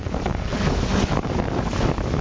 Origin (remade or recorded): remade